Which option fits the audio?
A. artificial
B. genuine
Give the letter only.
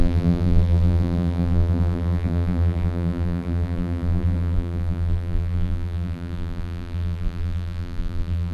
A